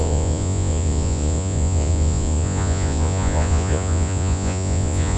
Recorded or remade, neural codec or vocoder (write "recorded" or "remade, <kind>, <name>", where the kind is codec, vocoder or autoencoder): remade, vocoder, Vocos